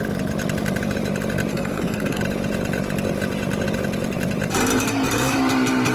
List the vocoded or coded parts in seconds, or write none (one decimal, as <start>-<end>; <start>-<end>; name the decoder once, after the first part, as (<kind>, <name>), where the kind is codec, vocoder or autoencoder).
1.5-2.2 (codec, SNAC)